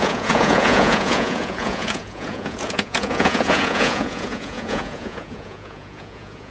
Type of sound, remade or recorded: remade